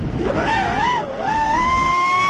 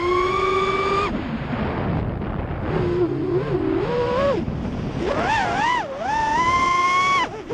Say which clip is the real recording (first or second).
second